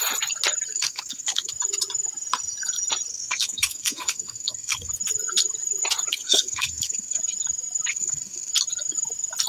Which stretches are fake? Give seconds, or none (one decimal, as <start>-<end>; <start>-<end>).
0.7-1.5; 3.1-4.9; 6.1-7.2; 7.9-8.5